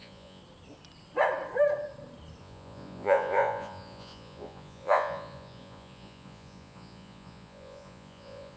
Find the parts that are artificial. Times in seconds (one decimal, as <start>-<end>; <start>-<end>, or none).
0.0-0.4; 2.4-8.6